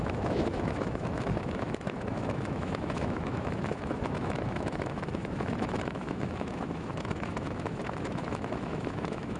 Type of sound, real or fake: fake